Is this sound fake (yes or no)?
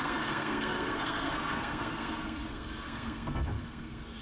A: yes